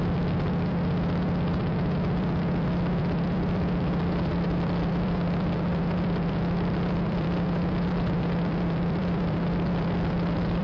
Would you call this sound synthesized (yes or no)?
yes